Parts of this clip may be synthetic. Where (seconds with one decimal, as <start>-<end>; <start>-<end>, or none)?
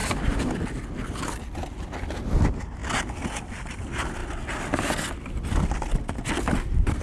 none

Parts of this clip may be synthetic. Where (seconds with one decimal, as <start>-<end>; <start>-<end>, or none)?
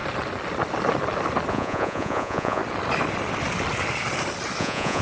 1.5-2.6; 4.6-5.0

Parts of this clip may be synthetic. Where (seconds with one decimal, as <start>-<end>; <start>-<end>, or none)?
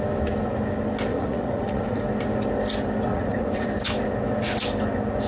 1.1-2.0; 3.1-3.7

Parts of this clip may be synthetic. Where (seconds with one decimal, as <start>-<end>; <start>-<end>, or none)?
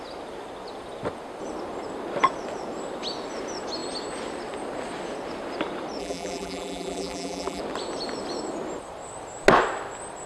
6.0-7.6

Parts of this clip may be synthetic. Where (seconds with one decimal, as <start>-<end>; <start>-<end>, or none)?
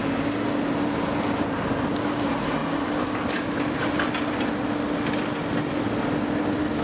none